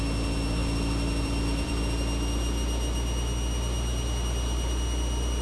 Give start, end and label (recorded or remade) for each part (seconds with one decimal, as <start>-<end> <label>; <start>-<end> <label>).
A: 0.0-0.6 recorded; 0.6-1.7 remade; 1.7-5.4 recorded